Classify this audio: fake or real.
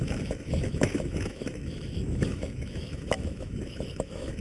fake